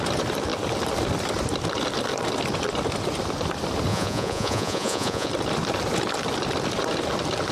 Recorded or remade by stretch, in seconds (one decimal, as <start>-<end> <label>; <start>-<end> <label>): 0.0-3.9 recorded; 3.9-5.3 remade; 5.3-7.5 recorded

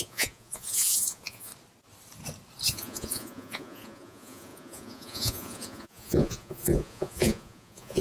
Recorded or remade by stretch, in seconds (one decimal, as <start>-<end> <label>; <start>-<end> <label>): 0.0-1.5 remade; 1.5-2.7 recorded; 2.7-8.0 remade

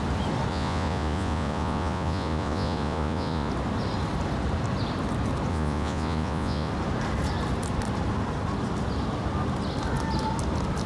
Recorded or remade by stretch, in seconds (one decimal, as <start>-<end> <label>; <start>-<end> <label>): 0.0-0.5 recorded; 0.5-3.5 remade; 3.5-5.5 recorded; 5.5-6.7 remade; 6.7-10.9 recorded

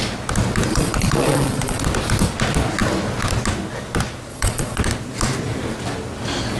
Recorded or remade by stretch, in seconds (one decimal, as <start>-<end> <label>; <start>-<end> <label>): 0.0-0.7 recorded; 0.7-1.8 remade; 1.8-4.3 recorded; 4.3-4.8 remade; 4.8-6.6 recorded